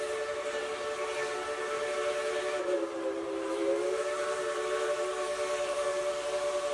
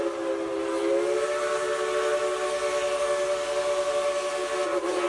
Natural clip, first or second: second